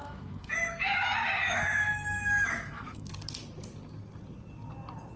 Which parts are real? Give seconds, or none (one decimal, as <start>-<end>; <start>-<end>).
3.1-5.2